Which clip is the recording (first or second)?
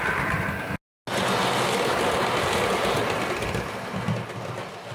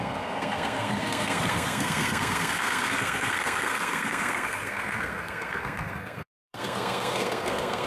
first